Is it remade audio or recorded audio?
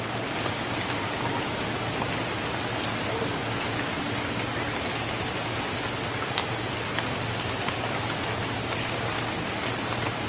recorded